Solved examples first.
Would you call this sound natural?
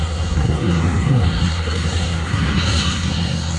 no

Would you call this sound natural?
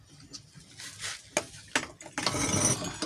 yes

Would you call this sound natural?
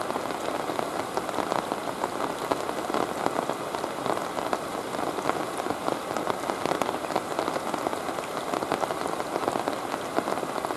yes